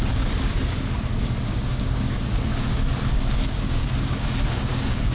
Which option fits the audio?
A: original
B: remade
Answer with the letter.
B